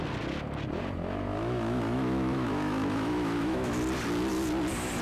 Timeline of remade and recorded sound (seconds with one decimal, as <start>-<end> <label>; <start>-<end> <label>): 0.0-1.3 recorded; 1.3-3.7 remade; 3.7-5.0 recorded